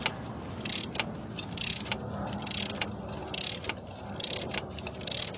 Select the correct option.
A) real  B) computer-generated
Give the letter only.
A